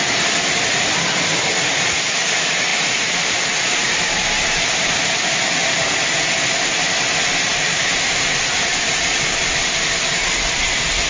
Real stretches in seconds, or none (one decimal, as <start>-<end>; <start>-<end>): 0.0-2.7; 5.0-7.5; 9.4-11.1